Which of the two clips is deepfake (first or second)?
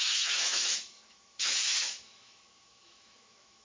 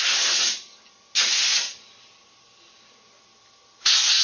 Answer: first